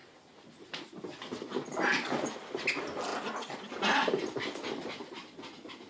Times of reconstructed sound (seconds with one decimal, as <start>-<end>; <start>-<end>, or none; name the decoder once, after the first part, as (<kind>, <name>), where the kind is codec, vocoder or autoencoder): none